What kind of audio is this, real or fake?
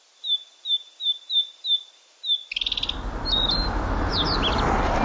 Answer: real